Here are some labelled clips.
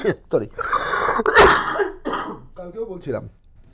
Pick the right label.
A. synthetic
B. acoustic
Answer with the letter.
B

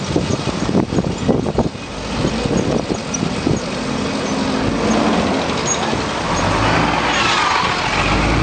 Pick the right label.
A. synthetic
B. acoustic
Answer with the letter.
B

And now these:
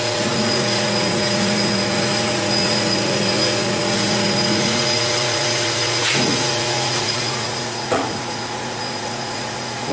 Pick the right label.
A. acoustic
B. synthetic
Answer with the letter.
B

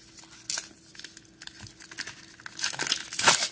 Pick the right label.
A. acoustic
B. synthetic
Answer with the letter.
A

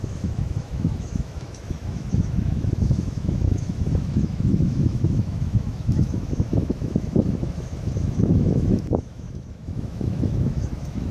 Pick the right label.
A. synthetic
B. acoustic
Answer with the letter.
A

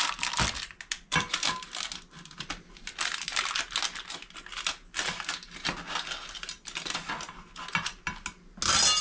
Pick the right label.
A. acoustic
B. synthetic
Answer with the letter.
A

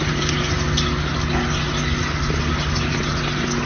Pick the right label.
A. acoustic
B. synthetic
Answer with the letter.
A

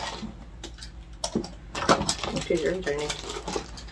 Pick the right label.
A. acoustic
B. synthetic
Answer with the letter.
A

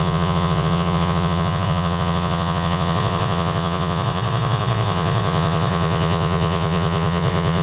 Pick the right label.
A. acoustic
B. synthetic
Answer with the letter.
B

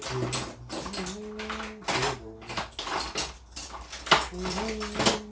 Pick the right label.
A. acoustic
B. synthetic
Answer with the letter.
A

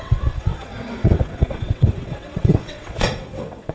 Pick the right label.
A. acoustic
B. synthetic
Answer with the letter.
B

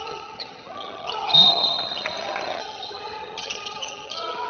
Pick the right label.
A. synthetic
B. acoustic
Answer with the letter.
A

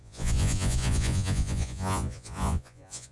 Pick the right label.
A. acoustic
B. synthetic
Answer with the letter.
B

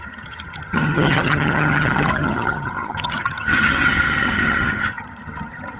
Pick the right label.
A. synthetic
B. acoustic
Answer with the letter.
A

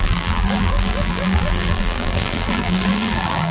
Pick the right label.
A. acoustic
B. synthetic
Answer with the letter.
B